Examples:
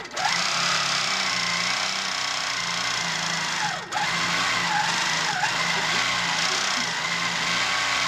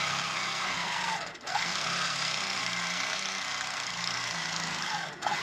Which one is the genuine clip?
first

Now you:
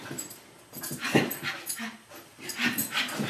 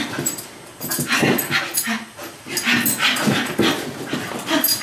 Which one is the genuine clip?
second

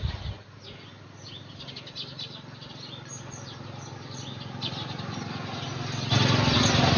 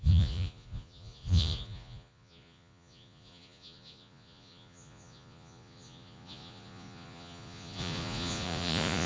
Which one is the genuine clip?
first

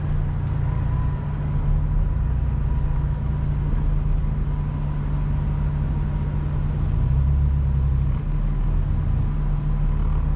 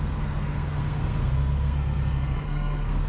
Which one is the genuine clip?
first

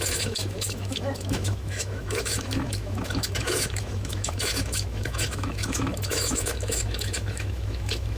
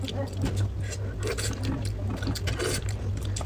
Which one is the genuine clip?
second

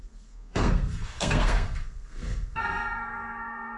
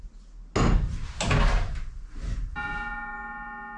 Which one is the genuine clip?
second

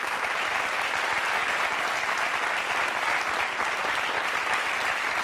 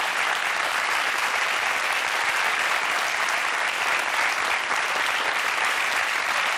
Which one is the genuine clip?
first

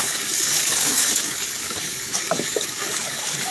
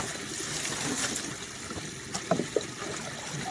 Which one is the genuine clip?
second